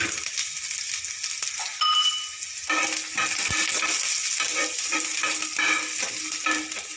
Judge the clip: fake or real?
real